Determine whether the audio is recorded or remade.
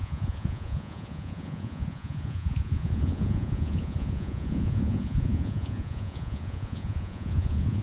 remade